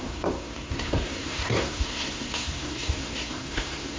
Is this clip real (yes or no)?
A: no